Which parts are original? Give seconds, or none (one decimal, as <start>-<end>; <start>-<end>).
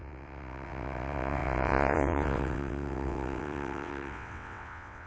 none